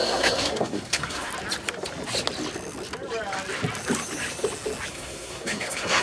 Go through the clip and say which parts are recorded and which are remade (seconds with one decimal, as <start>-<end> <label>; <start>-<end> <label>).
0.0-1.3 remade; 1.3-4.9 recorded; 4.9-6.0 remade